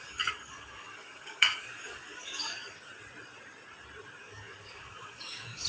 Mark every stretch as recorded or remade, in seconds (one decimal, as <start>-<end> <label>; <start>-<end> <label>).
0.0-2.9 remade; 2.9-4.2 recorded; 4.2-5.7 remade